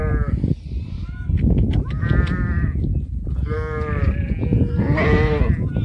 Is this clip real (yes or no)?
yes